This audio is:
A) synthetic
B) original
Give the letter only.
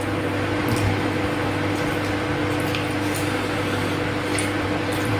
B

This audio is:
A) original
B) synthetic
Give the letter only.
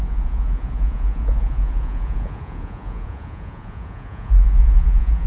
B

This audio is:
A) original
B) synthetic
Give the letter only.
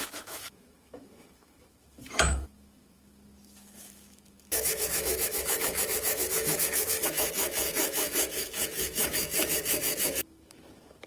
B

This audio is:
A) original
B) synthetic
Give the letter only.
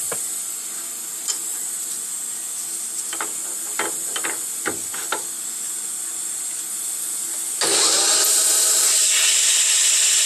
A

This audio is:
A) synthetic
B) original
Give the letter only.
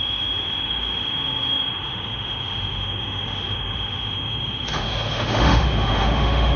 A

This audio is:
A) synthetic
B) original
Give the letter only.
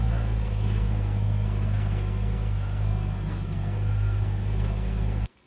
A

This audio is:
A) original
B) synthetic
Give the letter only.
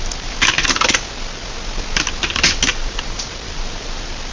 A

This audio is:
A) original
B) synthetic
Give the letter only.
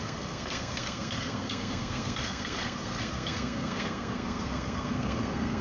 B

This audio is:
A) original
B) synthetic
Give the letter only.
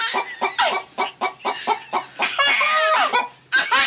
A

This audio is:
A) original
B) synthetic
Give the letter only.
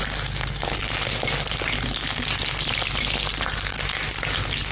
A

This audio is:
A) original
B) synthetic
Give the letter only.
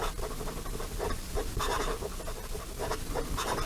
A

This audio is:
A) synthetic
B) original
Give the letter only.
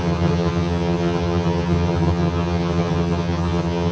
A